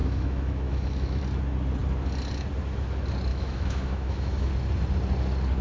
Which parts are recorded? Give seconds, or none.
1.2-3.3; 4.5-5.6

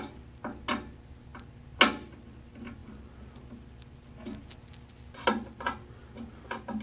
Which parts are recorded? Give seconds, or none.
0.0-6.8

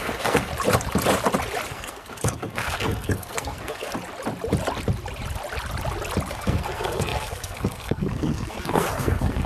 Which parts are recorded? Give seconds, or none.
0.5-1.7; 3.9-6.3

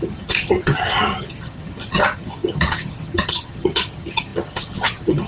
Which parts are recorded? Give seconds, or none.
none

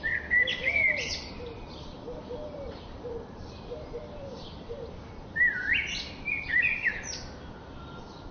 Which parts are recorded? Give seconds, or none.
0.0-0.5; 5.1-8.3

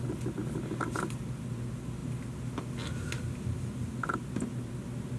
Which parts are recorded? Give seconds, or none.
0.0-5.2